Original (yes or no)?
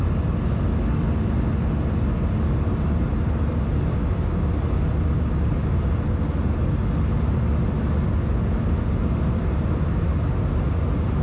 yes